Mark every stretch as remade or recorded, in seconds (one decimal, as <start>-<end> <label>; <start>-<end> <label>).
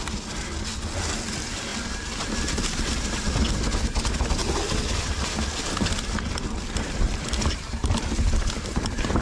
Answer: 0.0-4.4 recorded; 4.4-9.2 remade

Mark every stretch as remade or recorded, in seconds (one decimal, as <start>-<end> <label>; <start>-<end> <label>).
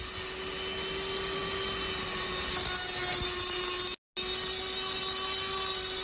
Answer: 0.0-6.0 recorded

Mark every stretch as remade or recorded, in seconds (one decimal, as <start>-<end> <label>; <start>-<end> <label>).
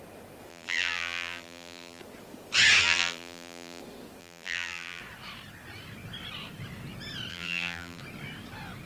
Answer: 0.0-0.5 recorded; 0.5-2.0 remade; 2.0-2.8 recorded; 2.8-3.8 remade; 3.8-4.2 recorded; 4.2-5.0 remade; 5.0-7.3 recorded; 7.3-8.0 remade; 8.0-8.9 recorded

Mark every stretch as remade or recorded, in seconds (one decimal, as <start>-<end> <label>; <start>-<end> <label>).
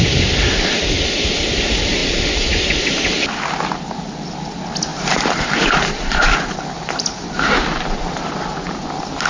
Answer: 0.0-4.9 recorded; 4.9-8.3 remade; 8.3-9.3 recorded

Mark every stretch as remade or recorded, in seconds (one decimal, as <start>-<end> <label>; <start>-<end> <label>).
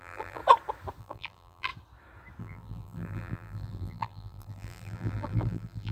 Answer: 0.0-0.4 remade; 0.4-1.0 recorded; 1.0-1.7 remade; 1.7-2.4 recorded; 2.4-5.9 remade